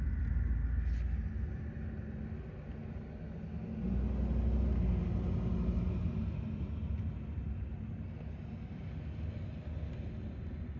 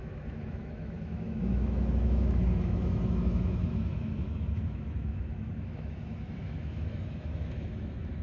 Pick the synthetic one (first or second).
second